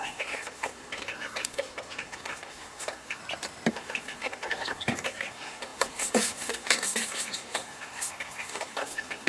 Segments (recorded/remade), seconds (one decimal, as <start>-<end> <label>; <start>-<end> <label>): 0.0-3.2 remade; 3.2-3.7 recorded; 3.7-9.3 remade